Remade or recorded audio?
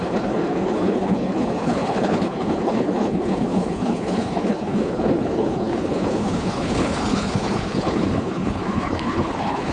remade